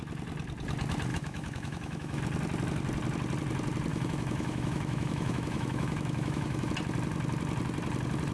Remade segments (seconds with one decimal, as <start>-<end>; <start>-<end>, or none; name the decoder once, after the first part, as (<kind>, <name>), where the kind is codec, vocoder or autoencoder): 1.1-2.2 (autoencoder, DAC-VAE); 3.9-6.7